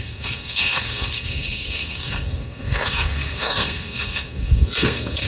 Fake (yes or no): yes